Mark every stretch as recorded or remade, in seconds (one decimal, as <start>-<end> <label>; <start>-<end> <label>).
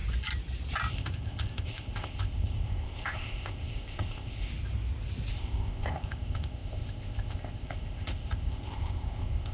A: 0.0-0.9 recorded; 0.9-4.5 remade; 4.5-5.3 recorded; 5.3-9.5 remade